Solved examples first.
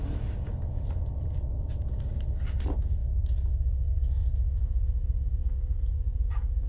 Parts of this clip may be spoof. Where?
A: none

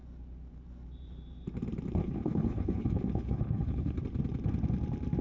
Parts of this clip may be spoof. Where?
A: 2.0-4.0 (codec, HILCodec)

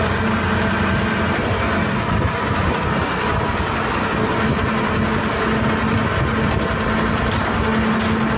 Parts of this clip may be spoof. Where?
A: none

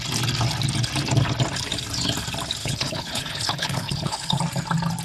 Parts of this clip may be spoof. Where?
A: 2.6-4.4 (codec, HILCodec)